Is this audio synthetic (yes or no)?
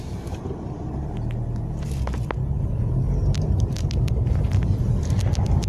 no